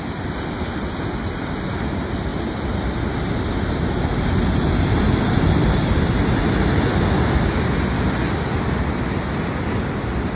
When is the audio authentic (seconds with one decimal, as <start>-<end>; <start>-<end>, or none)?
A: 0.0-10.4